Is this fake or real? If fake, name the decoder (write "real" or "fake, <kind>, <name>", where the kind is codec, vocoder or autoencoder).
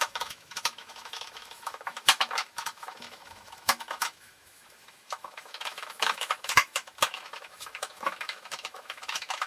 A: fake, autoencoder, DAC-VAE